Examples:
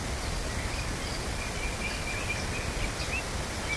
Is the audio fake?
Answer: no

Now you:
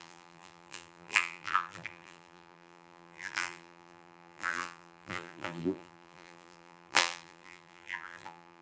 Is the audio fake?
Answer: yes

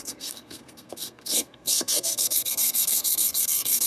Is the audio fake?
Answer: yes